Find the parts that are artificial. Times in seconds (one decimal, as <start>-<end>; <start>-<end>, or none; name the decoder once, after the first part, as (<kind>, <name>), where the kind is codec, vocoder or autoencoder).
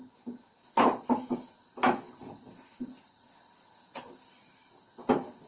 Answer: none